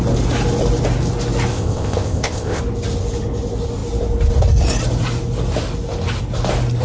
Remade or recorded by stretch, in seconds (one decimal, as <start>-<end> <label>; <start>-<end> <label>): 0.0-1.5 recorded; 1.5-2.6 remade; 2.6-6.8 recorded